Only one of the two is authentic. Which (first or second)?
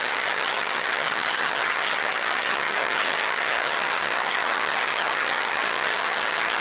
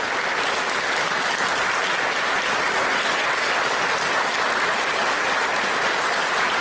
second